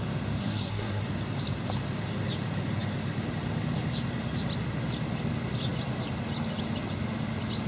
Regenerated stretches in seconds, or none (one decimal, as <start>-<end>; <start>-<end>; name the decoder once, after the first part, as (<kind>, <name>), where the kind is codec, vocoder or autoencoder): 0.4-1.0 (codec, SNAC)